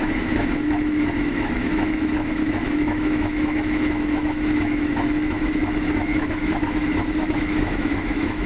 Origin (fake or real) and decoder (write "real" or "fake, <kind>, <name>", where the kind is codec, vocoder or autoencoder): fake, autoencoder, DAC-VAE